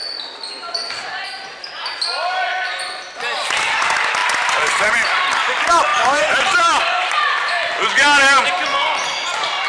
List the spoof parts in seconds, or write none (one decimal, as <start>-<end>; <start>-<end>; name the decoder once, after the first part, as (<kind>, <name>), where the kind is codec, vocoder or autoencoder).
4.2-5.1 (vocoder, BigVGAN v2); 5.9-7.5